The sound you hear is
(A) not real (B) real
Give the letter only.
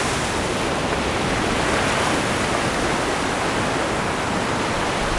B